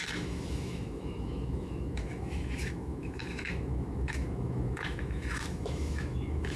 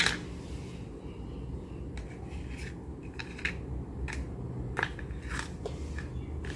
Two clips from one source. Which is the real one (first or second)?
second